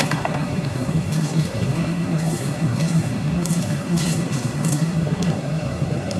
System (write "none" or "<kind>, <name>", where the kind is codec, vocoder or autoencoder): codec, SNAC